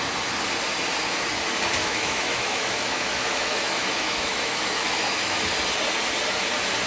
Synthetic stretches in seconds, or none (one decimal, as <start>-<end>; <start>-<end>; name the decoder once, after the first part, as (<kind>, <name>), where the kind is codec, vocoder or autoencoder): 1.8-5.4 (autoencoder, DAC-VAE)